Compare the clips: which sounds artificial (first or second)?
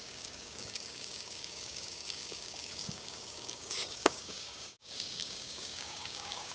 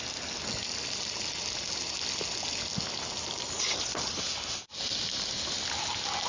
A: first